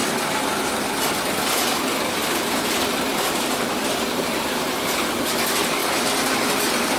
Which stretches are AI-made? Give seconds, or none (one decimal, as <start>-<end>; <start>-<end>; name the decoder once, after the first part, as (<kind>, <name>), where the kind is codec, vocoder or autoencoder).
2.2-4.7 (vocoder, BigVGAN v2)